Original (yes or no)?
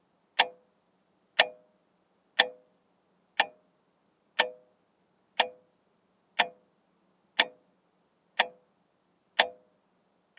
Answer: yes